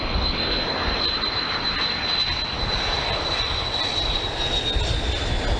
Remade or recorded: recorded